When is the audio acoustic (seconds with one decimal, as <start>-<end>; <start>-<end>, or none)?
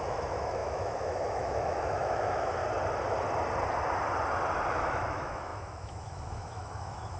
2.6-4.8